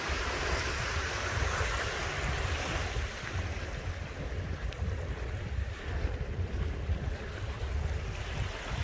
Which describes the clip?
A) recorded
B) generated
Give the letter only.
A